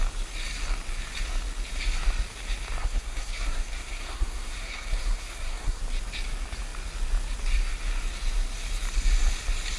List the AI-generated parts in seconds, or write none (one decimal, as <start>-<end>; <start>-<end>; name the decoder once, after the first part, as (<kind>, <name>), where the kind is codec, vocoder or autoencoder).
2.8-5.8 (codec, SNAC)